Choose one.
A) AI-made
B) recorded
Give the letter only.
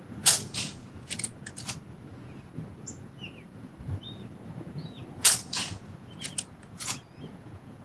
A